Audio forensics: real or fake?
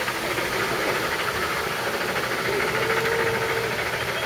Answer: real